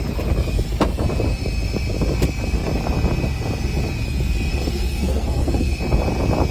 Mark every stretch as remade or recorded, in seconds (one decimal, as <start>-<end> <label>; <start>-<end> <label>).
0.0-4.5 recorded; 4.5-5.8 remade; 5.8-6.5 recorded